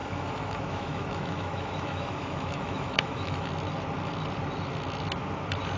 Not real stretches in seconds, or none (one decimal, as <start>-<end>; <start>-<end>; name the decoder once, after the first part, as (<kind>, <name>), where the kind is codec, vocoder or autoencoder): 0.0-3.5 (autoencoder, DAC-VAE)